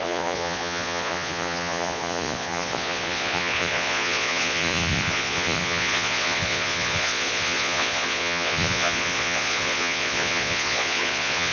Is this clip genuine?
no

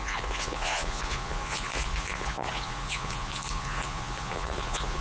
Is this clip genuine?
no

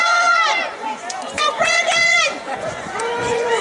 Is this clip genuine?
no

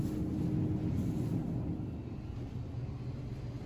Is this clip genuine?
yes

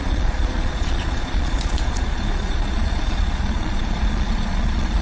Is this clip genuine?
no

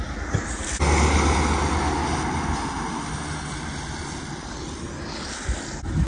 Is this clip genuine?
yes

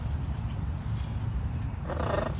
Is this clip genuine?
yes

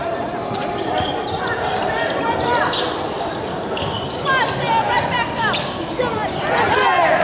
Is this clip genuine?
yes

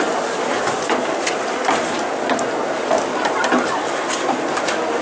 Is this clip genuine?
yes